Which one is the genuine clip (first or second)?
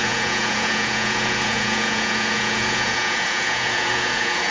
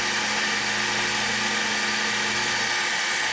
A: second